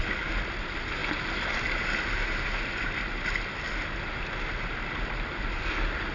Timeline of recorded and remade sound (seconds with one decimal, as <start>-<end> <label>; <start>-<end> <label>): 0.0-6.1 recorded